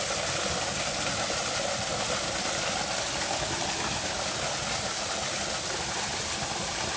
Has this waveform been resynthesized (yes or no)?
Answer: no